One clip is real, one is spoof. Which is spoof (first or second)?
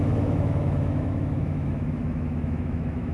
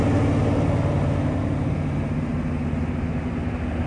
first